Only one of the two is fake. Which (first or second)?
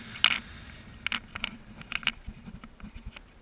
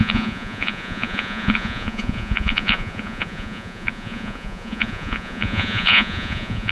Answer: second